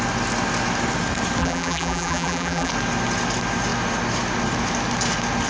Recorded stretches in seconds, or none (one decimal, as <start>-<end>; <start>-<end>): 0.0-1.4; 2.7-5.5